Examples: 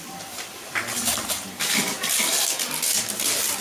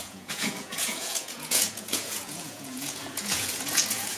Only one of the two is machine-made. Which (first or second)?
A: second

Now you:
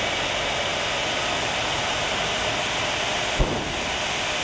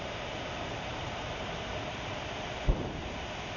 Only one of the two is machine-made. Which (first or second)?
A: second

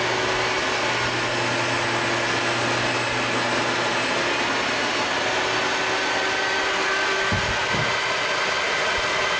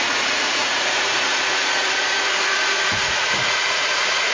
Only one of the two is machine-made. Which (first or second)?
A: second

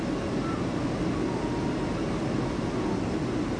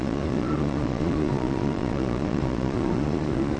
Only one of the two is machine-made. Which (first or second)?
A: second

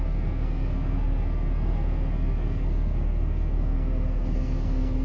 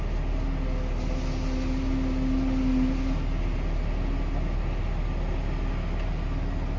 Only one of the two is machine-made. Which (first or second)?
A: first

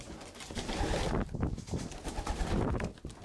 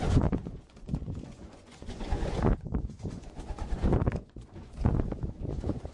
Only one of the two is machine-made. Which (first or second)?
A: second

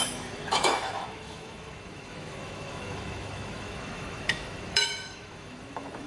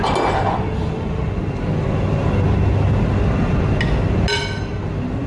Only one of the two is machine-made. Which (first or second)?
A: first